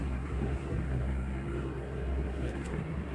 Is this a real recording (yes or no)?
no